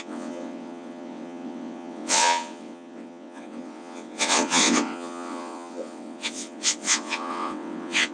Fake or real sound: fake